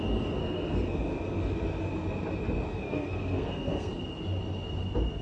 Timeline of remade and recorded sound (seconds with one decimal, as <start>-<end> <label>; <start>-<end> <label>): 0.0-0.4 recorded; 0.4-1.0 remade; 1.0-2.7 recorded; 2.7-3.9 remade; 3.9-5.2 recorded